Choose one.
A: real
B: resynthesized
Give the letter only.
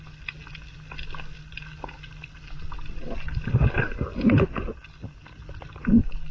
A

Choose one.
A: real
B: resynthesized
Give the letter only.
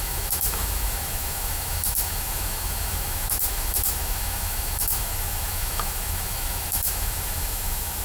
B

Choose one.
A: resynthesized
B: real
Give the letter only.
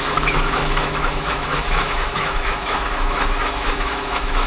A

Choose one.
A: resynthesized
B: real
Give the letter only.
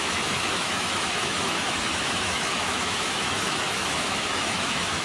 A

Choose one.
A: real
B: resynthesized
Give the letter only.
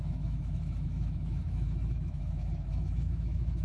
B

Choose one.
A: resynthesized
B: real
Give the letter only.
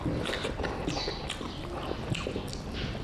B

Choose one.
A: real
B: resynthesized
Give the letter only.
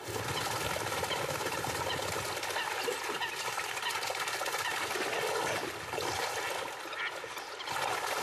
A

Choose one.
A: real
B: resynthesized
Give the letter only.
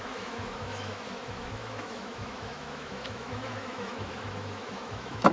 B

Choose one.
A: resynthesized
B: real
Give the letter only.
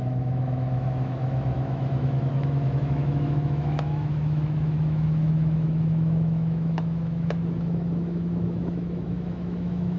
A